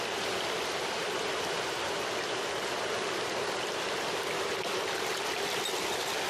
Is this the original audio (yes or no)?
yes